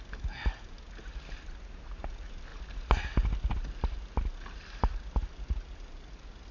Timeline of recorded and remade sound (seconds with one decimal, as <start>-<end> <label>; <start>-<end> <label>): 0.0-6.5 recorded